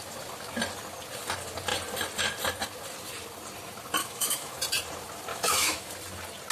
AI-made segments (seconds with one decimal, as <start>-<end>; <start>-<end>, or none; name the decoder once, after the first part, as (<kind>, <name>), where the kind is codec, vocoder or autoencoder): 4.0-4.6 (autoencoder, DAC-VAE); 5.3-5.9